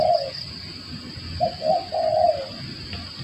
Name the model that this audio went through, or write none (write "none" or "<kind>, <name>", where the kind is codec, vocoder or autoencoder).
none